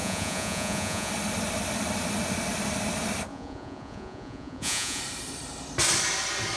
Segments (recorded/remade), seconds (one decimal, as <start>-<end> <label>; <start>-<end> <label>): 0.0-1.1 remade; 1.1-3.3 recorded; 3.3-5.0 remade; 5.0-6.6 recorded